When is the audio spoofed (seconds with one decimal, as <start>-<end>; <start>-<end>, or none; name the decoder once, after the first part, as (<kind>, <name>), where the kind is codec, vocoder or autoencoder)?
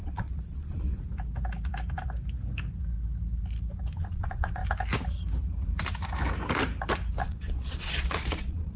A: 0.0-0.9 (vocoder, Vocos); 4.0-4.6; 7.2-8.8